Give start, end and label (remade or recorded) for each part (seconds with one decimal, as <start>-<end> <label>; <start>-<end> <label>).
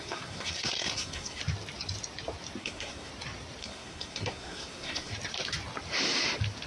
0.0-1.4 remade; 1.4-2.6 recorded; 2.6-3.1 remade; 3.1-3.6 recorded; 3.6-5.1 remade; 5.1-6.7 recorded